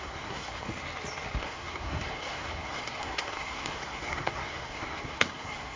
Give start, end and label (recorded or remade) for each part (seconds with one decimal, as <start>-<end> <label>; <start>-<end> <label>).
0.0-0.7 remade; 0.7-1.4 recorded; 1.4-5.8 remade